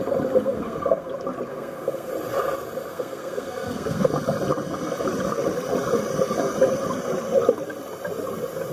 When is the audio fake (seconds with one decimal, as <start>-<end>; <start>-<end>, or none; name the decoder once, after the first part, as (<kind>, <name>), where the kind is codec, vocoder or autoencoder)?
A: 0.4-1.1 (codec, SNAC); 1.5-2.1; 2.9-4.1